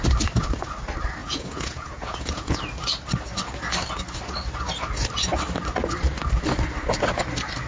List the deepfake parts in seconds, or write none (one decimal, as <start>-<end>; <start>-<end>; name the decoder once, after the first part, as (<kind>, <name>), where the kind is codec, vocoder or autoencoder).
1.2-2.6 (vocoder, Vocos)